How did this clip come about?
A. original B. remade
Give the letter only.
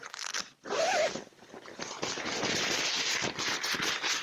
A